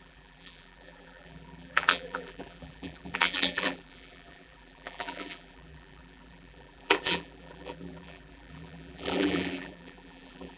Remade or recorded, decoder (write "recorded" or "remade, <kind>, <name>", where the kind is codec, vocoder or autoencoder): remade, vocoder, BigVGAN v2